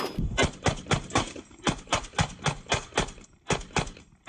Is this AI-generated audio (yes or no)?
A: no